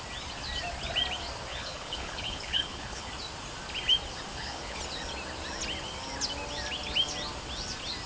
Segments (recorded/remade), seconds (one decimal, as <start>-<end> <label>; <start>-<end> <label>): 0.0-1.5 recorded; 1.5-3.1 remade; 3.1-4.3 recorded; 4.3-4.8 remade; 4.8-8.1 recorded

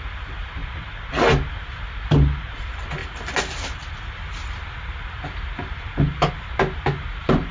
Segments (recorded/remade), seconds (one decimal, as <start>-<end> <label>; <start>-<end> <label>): 0.0-7.5 recorded

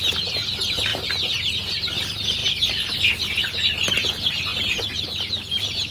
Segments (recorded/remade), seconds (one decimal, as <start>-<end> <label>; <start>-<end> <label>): 0.0-5.9 recorded

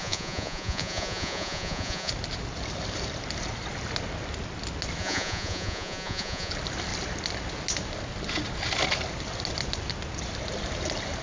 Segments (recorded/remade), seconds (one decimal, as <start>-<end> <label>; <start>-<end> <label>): 0.0-2.1 remade; 2.1-5.0 recorded; 5.0-6.5 remade; 6.5-11.2 recorded

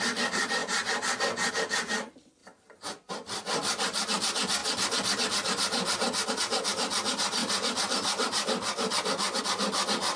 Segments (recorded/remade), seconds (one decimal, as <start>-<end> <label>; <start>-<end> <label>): 0.0-2.4 remade; 2.4-3.1 recorded; 3.1-4.6 remade; 4.6-6.3 recorded; 6.3-7.4 remade; 7.4-9.4 recorded; 9.4-10.2 remade

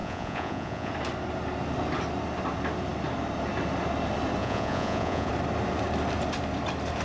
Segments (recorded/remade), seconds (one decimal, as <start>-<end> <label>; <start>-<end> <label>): 0.0-0.9 remade; 0.9-4.4 recorded; 4.4-5.3 remade; 5.3-7.0 recorded

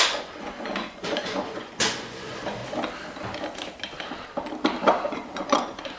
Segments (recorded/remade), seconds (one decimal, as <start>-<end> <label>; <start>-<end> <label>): 0.0-2.6 remade; 2.6-5.1 recorded; 5.1-6.0 remade

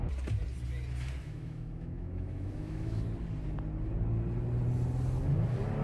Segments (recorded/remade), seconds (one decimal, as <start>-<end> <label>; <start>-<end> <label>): 0.0-1.2 recorded; 1.2-3.0 remade; 3.0-5.8 recorded